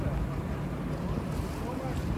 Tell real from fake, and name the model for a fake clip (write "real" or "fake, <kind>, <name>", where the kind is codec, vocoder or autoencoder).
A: real